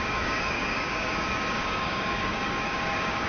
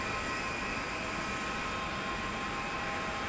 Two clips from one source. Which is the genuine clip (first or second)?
second